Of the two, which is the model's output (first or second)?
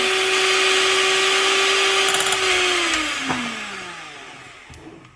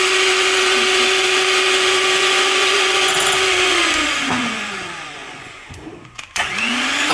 second